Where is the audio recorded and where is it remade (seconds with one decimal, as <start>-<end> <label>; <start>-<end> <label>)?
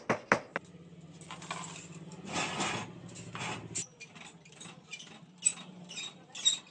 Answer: 0.0-6.7 recorded